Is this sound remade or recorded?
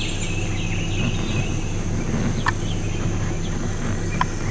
recorded